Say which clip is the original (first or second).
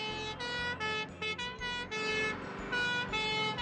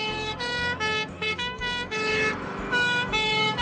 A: first